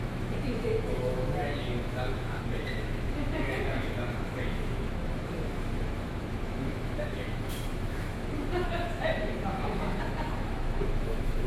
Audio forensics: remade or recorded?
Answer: remade